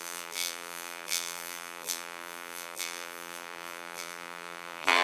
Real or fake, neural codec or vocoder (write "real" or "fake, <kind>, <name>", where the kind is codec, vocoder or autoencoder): fake, vocoder, BigVGAN v2